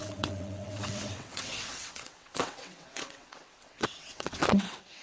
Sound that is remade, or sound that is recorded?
remade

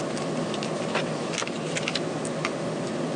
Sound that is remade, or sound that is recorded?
recorded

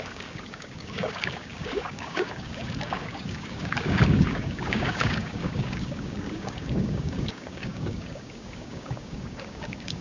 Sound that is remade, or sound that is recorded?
remade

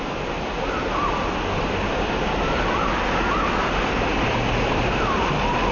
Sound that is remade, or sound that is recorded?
recorded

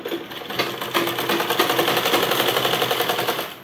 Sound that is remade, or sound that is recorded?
recorded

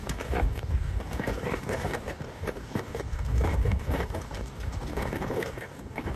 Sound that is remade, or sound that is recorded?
remade